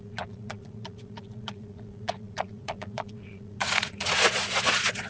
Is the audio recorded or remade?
remade